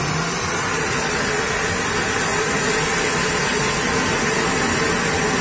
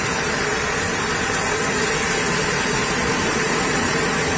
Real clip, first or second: first